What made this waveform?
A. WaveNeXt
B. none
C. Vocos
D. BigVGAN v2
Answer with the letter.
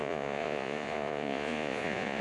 C